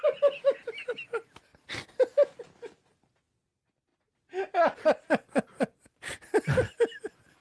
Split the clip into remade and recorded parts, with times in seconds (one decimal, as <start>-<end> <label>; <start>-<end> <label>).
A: 0.0-7.4 recorded